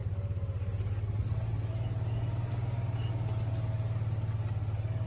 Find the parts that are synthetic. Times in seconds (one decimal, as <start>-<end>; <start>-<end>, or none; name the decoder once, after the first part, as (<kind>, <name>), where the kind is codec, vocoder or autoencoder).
none

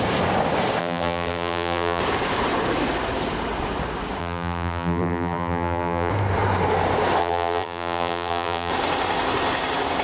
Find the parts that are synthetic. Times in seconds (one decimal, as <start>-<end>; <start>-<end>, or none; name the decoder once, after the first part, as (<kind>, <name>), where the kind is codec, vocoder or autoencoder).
0.8-2.0 (vocoder, BigVGAN v2); 4.2-6.1; 7.2-8.7

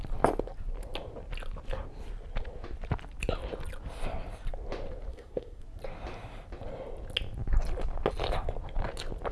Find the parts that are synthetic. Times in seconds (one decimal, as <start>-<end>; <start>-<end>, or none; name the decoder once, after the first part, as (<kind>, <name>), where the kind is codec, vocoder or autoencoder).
5.1-5.6 (codec, SNAC)